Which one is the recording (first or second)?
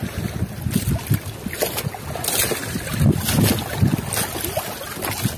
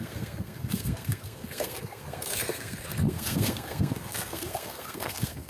first